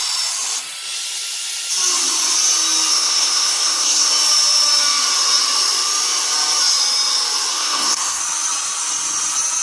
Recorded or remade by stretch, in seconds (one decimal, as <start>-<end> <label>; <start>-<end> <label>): 0.0-2.9 recorded; 2.9-4.1 remade; 4.1-7.5 recorded; 7.5-8.2 remade; 8.2-9.6 recorded